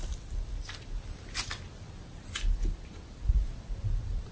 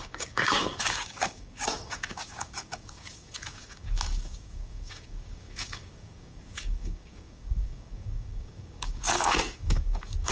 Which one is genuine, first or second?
first